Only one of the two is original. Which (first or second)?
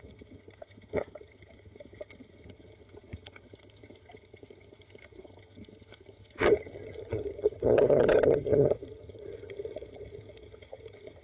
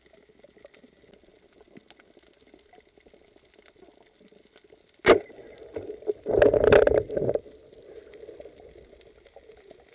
second